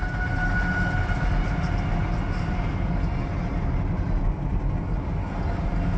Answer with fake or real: real